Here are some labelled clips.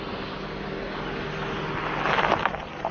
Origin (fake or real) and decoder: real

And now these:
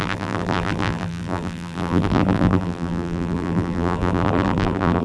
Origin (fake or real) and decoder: fake, vocoder, BigVGAN v2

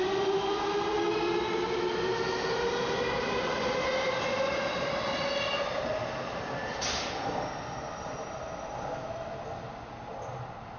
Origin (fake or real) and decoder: real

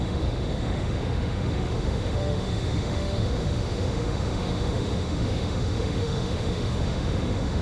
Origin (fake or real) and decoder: fake, autoencoder, DAC-VAE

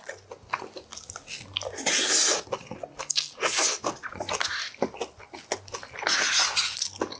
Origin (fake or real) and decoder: real